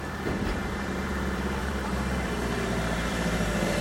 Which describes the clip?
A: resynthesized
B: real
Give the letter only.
A